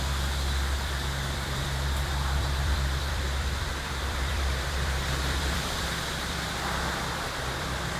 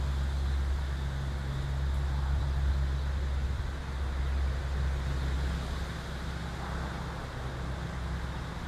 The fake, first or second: first